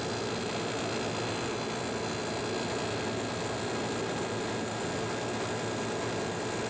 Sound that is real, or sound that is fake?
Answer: real